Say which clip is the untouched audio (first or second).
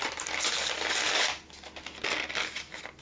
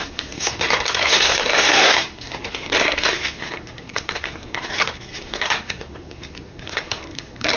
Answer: first